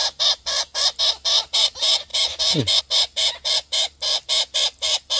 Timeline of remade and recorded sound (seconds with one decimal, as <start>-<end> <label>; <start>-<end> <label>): 0.0-5.2 recorded